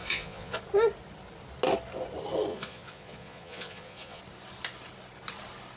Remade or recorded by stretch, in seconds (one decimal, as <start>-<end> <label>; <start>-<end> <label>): 0.0-0.6 remade; 0.6-2.5 recorded; 2.5-4.2 remade; 4.2-5.8 recorded